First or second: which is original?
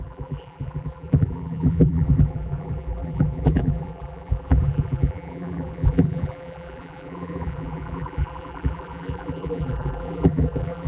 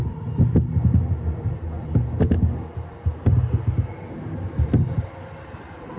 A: second